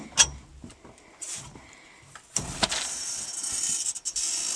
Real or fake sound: real